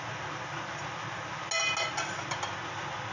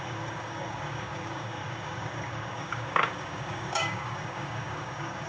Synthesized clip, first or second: second